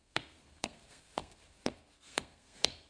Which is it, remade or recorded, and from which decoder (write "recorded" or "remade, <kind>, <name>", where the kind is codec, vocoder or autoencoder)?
remade, codec, SNAC